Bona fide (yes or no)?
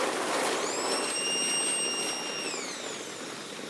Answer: yes